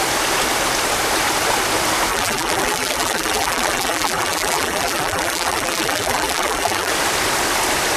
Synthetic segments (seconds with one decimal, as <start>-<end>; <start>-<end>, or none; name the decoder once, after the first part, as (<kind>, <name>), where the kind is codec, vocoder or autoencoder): 2.1-6.9 (vocoder, BigVGAN v2)